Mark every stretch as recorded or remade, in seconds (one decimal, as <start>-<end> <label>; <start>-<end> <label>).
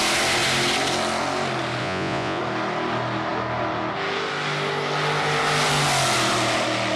0.0-1.8 recorded; 1.8-2.4 remade; 2.4-7.0 recorded